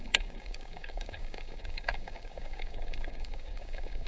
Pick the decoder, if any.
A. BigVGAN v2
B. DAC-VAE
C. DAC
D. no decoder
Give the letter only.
C